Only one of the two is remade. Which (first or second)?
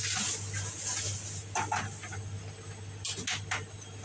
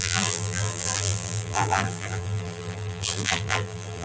second